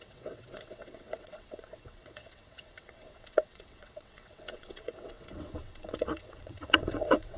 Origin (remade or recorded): remade